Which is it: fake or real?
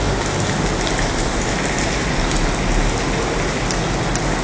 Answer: real